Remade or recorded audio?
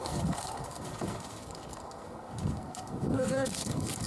remade